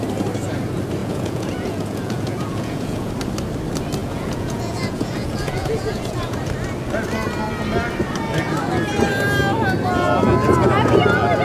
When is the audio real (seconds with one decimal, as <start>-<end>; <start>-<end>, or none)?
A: 0.0-1.0; 3.1-4.0; 6.4-11.4